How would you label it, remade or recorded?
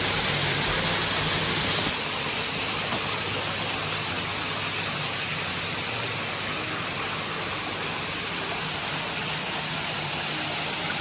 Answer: recorded